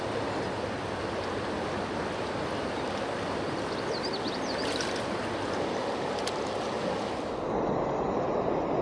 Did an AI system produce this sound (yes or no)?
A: no